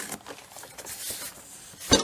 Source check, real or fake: real